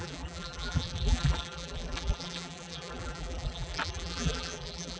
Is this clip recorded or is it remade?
remade